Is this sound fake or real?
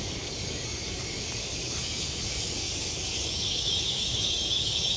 fake